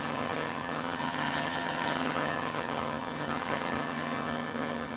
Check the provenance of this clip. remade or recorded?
remade